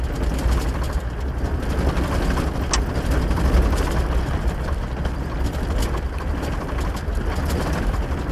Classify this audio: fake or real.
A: real